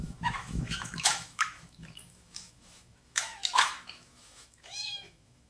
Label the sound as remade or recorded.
remade